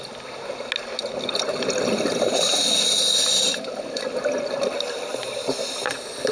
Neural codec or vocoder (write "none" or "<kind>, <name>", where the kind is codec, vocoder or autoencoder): none